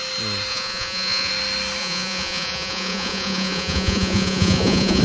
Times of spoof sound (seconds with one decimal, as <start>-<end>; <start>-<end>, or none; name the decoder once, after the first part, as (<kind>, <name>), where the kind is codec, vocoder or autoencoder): 0.5-1.3 (vocoder, Vocos); 1.8-5.0

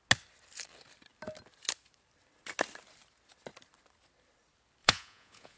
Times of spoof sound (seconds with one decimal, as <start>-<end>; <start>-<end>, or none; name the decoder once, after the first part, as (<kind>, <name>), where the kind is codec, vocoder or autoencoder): 4.8-5.6 (vocoder, Vocos)

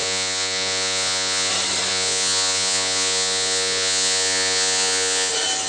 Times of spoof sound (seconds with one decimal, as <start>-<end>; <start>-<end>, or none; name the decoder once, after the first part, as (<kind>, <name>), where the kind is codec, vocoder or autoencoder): 0.0-1.5 (vocoder, Vocos); 1.9-5.3

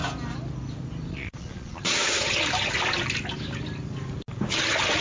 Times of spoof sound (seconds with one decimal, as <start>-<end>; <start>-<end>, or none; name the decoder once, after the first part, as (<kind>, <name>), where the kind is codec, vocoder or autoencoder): 1.1-2.0 (vocoder, Vocos)

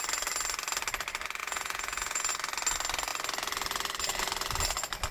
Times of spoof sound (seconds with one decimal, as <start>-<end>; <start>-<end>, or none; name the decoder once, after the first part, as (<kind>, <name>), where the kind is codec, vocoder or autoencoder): 1.4-2.3 (vocoder, Vocos)

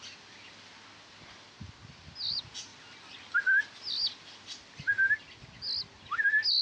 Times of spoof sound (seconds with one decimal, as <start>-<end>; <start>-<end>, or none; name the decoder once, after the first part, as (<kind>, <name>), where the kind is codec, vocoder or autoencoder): none